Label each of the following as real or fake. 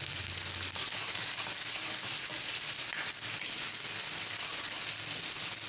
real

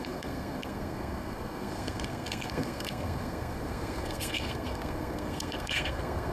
fake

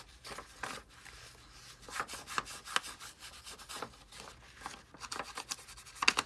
real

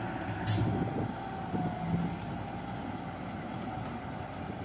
real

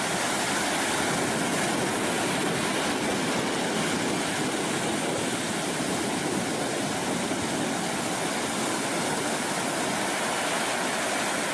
real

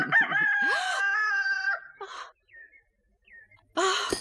real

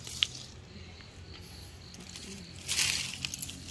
real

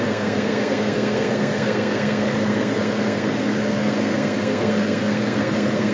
fake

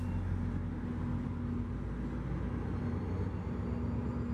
real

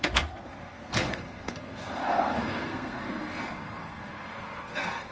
fake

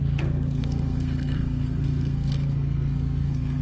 fake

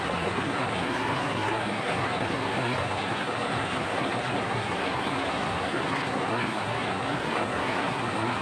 fake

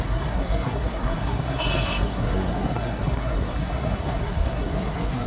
fake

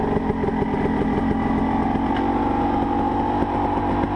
real